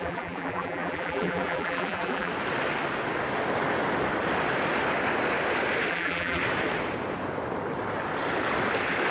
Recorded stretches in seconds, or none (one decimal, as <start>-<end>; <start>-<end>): 2.3-5.9; 6.4-9.1